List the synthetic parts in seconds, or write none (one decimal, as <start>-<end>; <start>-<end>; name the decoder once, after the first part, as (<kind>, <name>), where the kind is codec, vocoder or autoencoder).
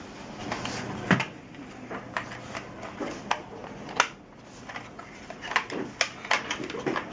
none